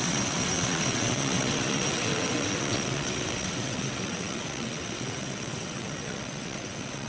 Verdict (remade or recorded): remade